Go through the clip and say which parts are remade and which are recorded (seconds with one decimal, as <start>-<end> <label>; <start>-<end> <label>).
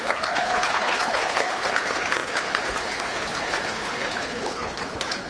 0.0-5.3 remade